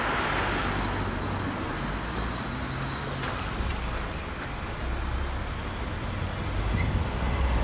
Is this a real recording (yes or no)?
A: yes